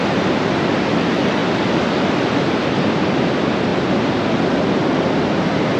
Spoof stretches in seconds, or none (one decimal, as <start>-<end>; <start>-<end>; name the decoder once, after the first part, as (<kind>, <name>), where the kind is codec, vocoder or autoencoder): none